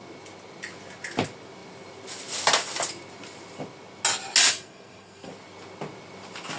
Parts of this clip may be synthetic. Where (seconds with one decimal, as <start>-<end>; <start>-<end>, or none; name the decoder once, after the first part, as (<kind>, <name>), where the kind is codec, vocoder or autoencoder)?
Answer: 4.5-5.3 (codec, SNAC)